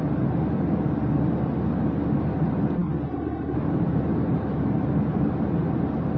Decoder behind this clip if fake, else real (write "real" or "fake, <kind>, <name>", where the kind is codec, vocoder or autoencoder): real